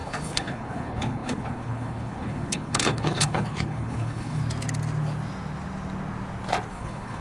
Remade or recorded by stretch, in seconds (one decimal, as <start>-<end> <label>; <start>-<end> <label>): 0.0-4.4 remade; 4.4-6.7 recorded; 6.7-7.2 remade